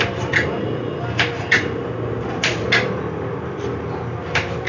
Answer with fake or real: real